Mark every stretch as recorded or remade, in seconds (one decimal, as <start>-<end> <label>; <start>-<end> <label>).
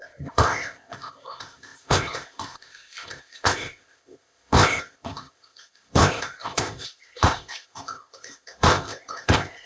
0.0-9.7 remade